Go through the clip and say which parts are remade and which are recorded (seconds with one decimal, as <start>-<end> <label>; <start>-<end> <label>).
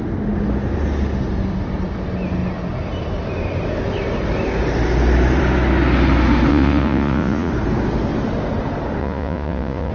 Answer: 0.0-6.5 recorded; 6.5-7.5 remade; 7.5-9.0 recorded; 9.0-9.9 remade